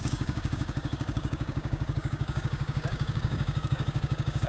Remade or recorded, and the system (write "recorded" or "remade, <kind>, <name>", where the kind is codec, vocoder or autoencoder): remade, codec, DAC